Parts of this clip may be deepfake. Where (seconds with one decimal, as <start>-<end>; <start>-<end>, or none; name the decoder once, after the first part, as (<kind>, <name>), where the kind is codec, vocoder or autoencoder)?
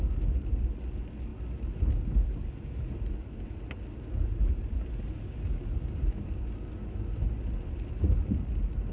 none